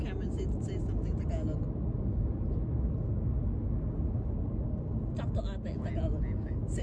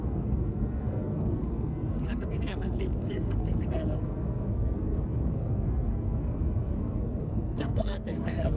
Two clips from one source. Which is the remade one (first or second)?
second